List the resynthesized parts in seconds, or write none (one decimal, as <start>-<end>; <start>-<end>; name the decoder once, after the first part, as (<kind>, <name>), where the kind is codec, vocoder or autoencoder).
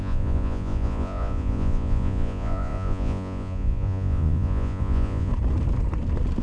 0.0-5.3 (vocoder, Vocos)